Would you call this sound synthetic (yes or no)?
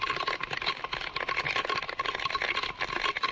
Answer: no